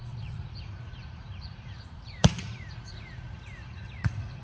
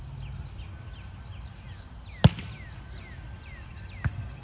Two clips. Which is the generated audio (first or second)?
first